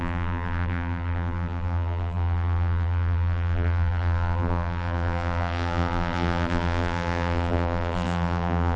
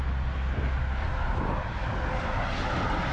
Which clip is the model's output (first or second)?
first